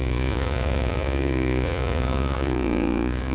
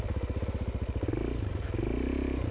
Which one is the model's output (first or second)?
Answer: first